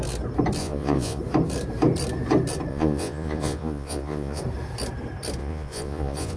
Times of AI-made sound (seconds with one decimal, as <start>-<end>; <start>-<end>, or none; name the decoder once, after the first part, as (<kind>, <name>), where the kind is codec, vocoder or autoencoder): 0.6-1.2 (vocoder, Vocos); 2.7-4.4; 5.4-6.4